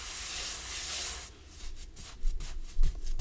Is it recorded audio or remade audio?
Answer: recorded